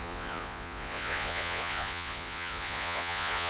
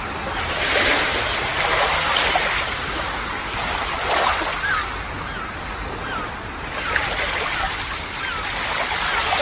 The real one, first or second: second